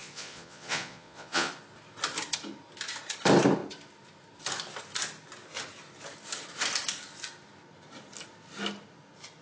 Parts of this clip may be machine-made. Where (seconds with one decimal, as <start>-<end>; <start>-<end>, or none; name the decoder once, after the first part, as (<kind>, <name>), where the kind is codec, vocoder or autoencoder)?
0.0-1.5 (vocoder, Vocos)